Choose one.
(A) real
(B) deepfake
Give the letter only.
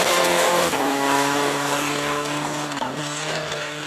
B